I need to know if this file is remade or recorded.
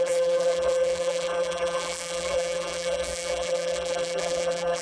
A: remade